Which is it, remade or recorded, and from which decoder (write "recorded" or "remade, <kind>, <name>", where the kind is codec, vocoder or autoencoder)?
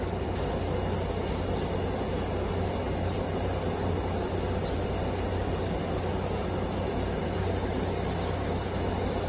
recorded